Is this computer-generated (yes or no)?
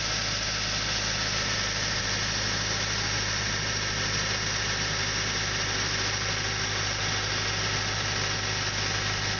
no